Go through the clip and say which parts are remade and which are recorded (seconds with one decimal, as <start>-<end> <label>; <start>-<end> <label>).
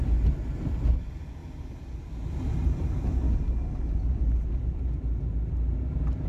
0.0-6.3 recorded